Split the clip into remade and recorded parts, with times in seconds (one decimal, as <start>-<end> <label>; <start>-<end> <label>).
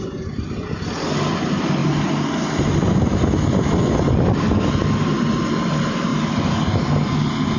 0.0-7.6 recorded